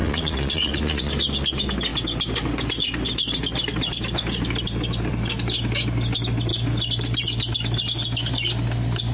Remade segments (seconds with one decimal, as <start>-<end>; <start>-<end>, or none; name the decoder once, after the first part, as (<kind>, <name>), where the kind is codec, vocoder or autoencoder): 0.0-1.1 (vocoder, WaveNeXt)